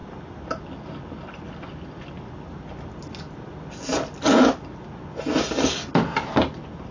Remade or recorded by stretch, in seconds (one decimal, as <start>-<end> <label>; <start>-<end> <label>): 0.0-6.9 recorded